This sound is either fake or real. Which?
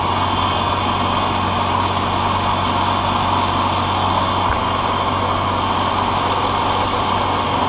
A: real